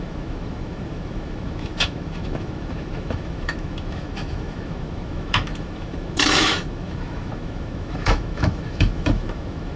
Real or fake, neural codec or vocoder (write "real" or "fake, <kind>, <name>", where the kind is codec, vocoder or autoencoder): fake, autoencoder, DAC-VAE